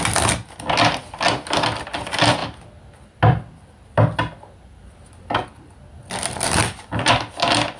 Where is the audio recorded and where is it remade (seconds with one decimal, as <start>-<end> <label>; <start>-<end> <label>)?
0.0-7.8 recorded